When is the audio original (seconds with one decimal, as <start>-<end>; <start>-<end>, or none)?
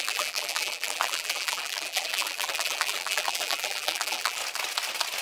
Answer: 4.4-5.2